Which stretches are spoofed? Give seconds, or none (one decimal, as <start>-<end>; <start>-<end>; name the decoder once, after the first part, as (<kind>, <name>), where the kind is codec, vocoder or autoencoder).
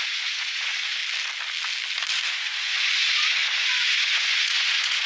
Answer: 0.0-1.0 (vocoder, Vocos); 2.3-5.1